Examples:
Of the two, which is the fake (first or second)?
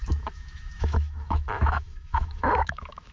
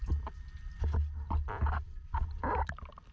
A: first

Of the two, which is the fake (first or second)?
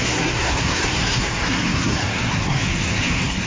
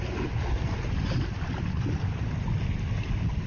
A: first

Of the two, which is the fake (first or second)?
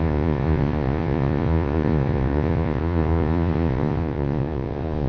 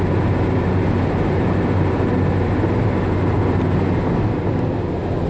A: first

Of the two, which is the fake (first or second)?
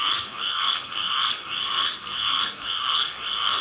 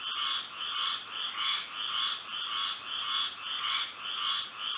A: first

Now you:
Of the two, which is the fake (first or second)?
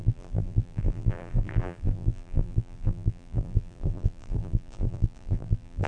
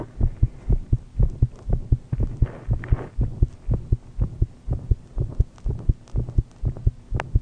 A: first